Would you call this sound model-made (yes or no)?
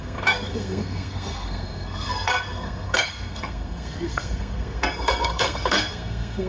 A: yes